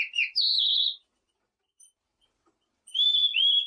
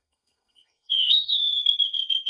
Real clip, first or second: first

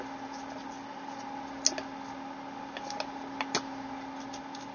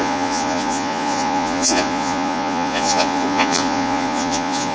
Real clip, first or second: first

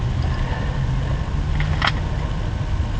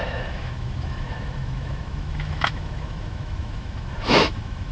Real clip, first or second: first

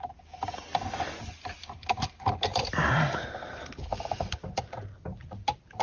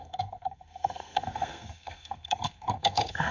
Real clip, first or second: first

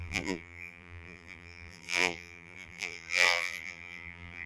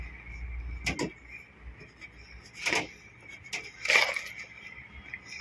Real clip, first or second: second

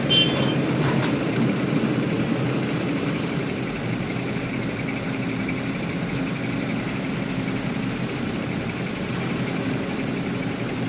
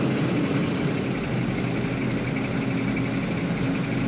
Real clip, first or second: second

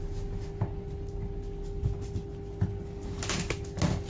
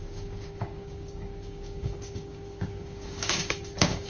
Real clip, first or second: first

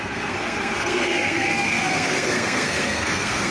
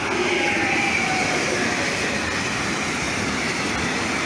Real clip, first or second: second